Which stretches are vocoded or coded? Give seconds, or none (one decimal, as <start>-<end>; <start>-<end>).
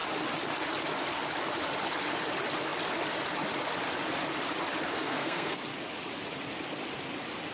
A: 4.9-5.6